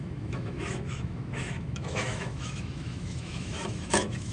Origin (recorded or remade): remade